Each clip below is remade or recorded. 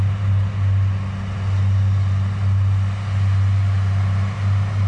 recorded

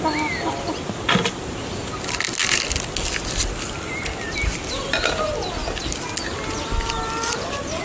recorded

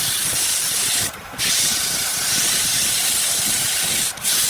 remade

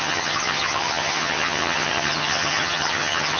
remade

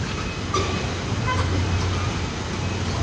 recorded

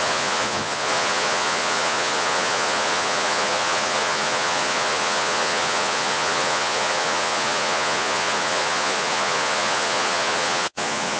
remade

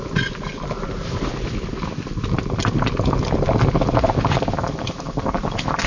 recorded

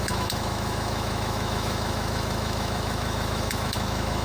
remade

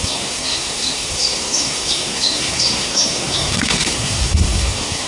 remade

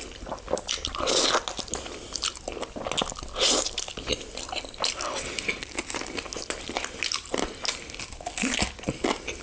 recorded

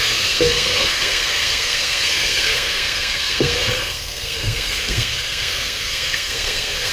remade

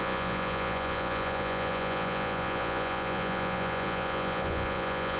remade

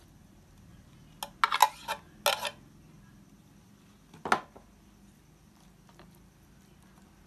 recorded